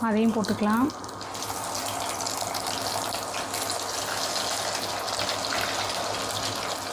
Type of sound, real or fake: real